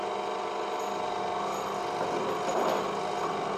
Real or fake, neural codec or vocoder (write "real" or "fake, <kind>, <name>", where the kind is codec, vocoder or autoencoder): real